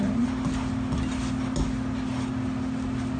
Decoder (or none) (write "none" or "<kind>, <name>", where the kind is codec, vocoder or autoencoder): none